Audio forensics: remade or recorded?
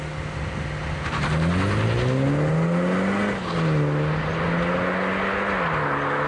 recorded